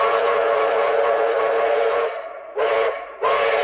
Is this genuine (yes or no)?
no